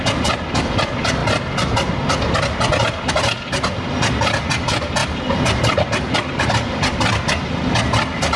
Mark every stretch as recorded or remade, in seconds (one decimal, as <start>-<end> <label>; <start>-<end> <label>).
0.0-8.4 recorded